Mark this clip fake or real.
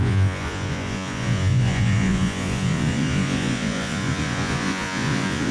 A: fake